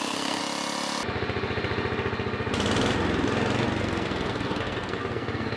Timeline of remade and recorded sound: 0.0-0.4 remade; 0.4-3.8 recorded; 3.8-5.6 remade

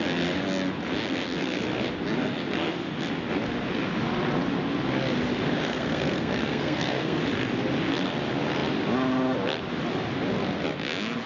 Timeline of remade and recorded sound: 0.0-5.7 recorded; 5.7-7.2 remade; 7.2-11.3 recorded

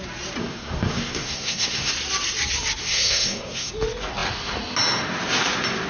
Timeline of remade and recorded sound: 0.0-0.4 recorded; 0.4-1.9 remade; 1.9-2.8 recorded; 2.8-3.7 remade; 3.7-5.9 recorded

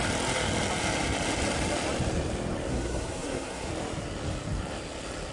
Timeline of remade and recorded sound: 0.0-2.7 recorded; 2.7-3.7 remade; 3.7-5.3 recorded

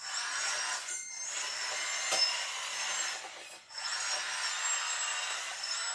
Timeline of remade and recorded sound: 0.0-1.2 remade; 1.2-3.5 recorded; 3.5-3.9 remade; 3.9-5.9 recorded

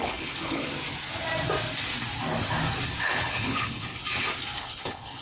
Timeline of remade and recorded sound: 0.0-0.7 remade; 0.7-3.0 recorded; 3.0-3.9 remade; 3.9-4.6 recorded; 4.6-5.2 remade

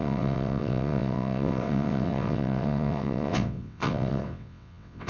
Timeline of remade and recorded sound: 0.0-5.1 remade

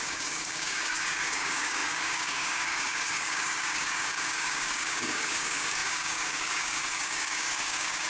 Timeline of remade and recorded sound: 0.0-8.1 remade